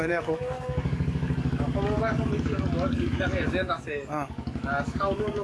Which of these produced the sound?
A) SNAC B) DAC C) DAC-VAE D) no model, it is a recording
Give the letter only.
B